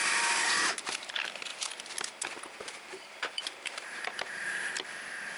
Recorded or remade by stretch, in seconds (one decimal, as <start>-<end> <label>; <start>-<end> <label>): 0.0-1.1 remade; 1.1-1.5 recorded; 1.5-4.7 remade; 4.7-5.4 recorded